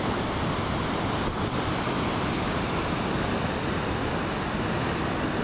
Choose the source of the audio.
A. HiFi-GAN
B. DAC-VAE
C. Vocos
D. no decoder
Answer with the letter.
D